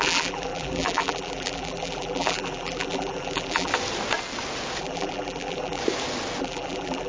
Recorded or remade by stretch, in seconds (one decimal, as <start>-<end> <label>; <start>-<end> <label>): 0.0-3.7 remade; 3.7-4.8 recorded; 4.8-5.8 remade; 5.8-6.4 recorded; 6.4-7.1 remade